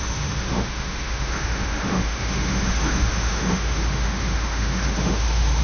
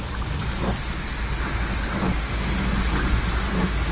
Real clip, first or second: second